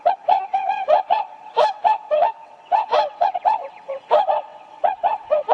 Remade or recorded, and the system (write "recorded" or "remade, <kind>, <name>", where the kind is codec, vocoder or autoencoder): remade, vocoder, WaveNeXt